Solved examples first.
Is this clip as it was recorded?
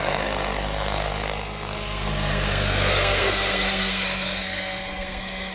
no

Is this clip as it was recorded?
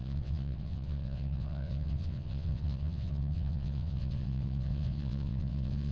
no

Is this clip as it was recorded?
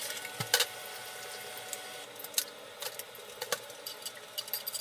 yes